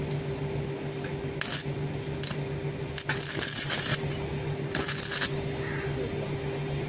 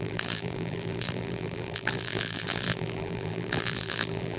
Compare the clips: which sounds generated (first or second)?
second